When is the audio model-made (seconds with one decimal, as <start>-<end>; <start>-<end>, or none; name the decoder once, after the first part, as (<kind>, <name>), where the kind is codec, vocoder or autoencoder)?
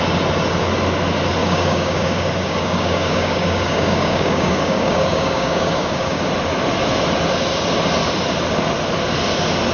1.4-6.2 (codec, DAC)